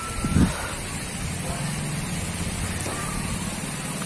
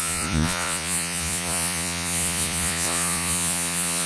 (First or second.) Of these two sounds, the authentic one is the first